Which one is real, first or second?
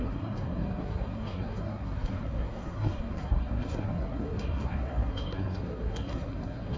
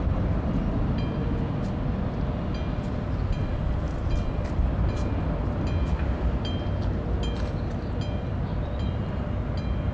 second